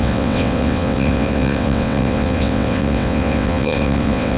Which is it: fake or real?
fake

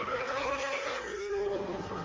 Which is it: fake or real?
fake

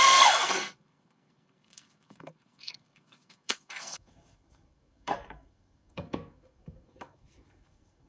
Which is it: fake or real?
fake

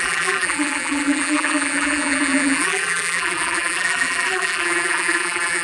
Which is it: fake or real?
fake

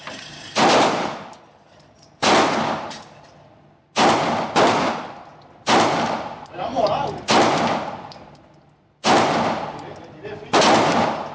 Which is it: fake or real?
real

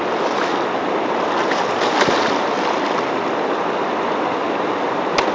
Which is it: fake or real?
real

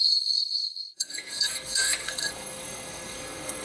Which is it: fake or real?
fake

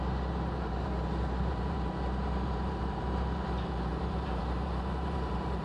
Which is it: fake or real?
fake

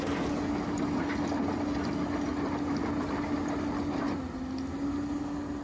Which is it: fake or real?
real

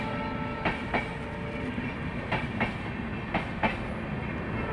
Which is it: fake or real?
real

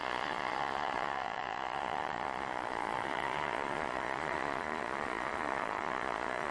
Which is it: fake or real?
fake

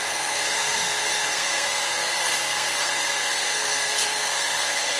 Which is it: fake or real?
fake